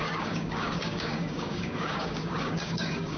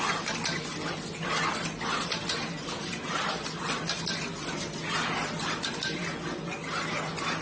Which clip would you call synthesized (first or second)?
first